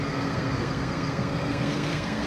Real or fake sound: fake